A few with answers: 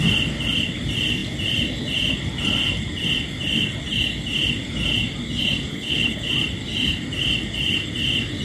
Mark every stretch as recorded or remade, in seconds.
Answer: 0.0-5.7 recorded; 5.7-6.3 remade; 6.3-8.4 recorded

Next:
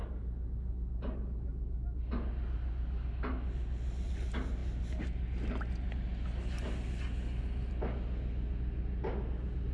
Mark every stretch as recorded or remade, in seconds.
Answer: 0.0-9.7 recorded

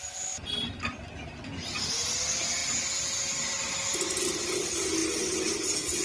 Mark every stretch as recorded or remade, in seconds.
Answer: 0.0-6.0 recorded

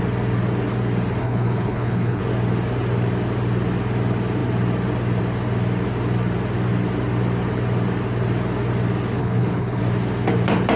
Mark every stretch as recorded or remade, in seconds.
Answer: 0.0-1.2 recorded; 1.2-2.2 remade; 2.2-9.2 recorded; 9.2-9.8 remade; 9.8-10.8 recorded

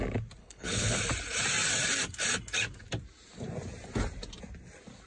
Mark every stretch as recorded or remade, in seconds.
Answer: 0.0-0.4 recorded; 0.4-1.0 remade; 1.0-5.1 recorded

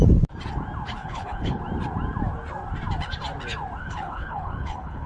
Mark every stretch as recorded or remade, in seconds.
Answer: 0.0-1.0 recorded; 1.0-1.6 remade; 1.6-3.8 recorded; 3.8-5.1 remade

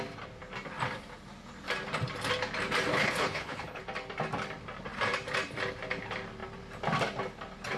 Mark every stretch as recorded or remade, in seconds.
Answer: 0.0-2.9 recorded; 2.9-3.8 remade; 3.8-7.8 recorded

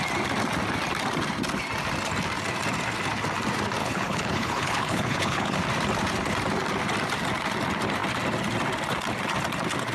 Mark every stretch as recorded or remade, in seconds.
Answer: 0.0-3.8 recorded; 3.8-5.6 remade; 5.6-9.9 recorded